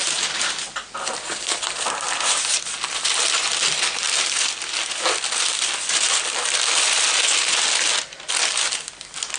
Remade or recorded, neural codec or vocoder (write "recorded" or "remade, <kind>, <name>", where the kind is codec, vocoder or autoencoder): recorded